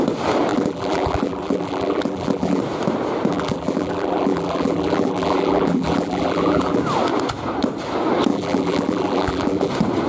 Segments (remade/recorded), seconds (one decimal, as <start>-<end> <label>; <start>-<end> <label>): 0.0-0.5 recorded; 0.5-2.6 remade; 2.6-3.3 recorded; 3.3-6.8 remade; 6.8-8.3 recorded; 8.3-9.7 remade; 9.7-10.1 recorded